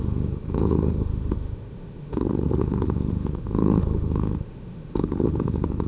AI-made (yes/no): yes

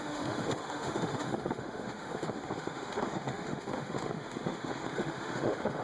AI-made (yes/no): yes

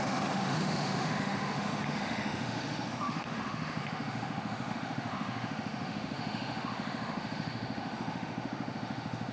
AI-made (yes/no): yes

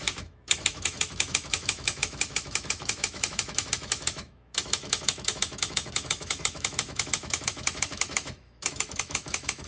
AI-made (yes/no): yes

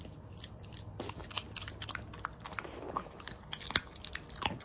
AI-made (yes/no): no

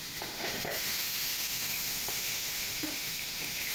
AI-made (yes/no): yes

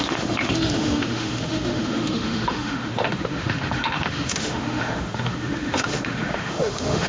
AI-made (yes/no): yes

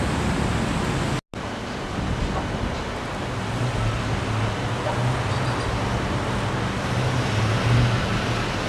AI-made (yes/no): no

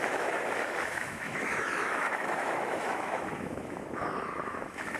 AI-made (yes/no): yes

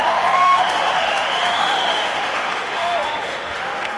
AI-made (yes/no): yes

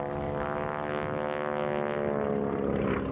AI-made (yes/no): no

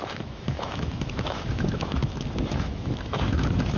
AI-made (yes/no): yes